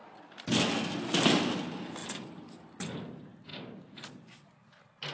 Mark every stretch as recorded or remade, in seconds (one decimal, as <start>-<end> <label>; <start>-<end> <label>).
0.0-3.5 recorded; 3.5-4.2 remade; 4.2-5.1 recorded